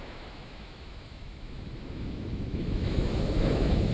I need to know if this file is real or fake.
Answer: fake